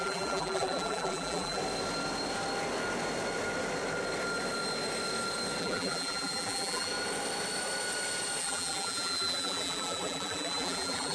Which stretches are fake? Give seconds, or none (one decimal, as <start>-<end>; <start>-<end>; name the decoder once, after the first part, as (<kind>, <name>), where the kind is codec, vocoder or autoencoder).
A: 0.0-1.6 (vocoder, BigVGAN v2); 5.6-6.9; 8.4-11.1